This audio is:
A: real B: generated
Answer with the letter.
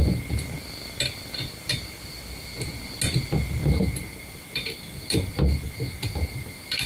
A